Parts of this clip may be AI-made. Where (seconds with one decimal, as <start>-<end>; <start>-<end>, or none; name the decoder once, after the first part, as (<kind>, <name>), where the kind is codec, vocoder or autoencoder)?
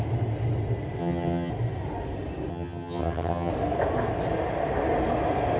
1.0-1.5 (vocoder, HiFi-GAN); 2.5-3.5